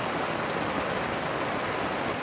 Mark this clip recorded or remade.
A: recorded